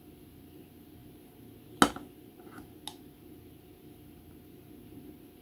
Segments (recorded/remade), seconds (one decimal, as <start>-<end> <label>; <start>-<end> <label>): 0.0-5.4 recorded